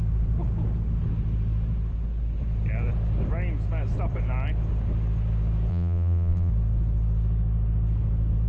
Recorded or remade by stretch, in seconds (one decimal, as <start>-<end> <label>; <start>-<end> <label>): 0.0-5.7 recorded; 5.7-6.5 remade; 6.5-8.5 recorded

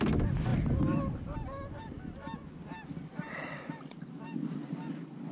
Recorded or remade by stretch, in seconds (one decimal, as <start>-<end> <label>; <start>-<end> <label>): 0.0-5.3 recorded

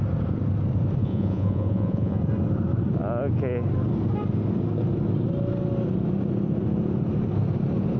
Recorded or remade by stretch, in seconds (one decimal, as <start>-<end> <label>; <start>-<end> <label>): 0.0-1.0 recorded; 1.0-2.2 remade; 2.2-8.0 recorded

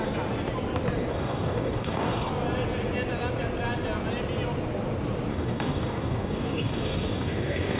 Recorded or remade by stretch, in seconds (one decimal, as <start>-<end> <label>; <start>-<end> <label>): 0.0-1.1 recorded; 1.1-2.3 remade; 2.3-5.3 recorded; 5.3-7.8 remade

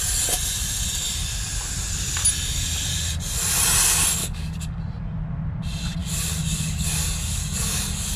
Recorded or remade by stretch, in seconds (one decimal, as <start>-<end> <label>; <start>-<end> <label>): 0.0-4.2 recorded; 4.2-4.8 remade; 4.8-6.0 recorded; 6.0-8.2 remade

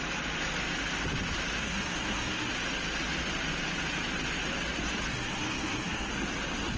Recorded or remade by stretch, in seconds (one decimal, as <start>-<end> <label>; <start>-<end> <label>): 0.0-1.6 recorded; 1.6-2.5 remade; 2.5-5.1 recorded; 5.1-6.1 remade; 6.1-6.8 recorded

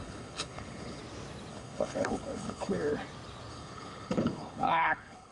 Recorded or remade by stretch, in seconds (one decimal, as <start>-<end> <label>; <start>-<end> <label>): 0.0-1.0 remade; 1.0-1.5 recorded; 1.5-2.9 remade; 2.9-3.5 recorded; 3.5-5.3 remade

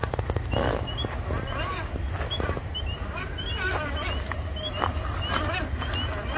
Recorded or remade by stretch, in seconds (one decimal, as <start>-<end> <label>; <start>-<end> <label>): 0.0-6.4 recorded